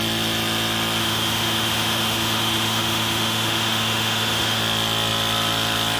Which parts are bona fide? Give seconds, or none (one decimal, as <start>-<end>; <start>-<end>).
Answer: 0.0-1.0; 4.6-6.0